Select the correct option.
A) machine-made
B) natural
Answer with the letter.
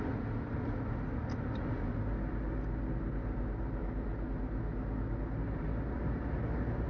B